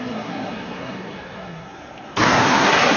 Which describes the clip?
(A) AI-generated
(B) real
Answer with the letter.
A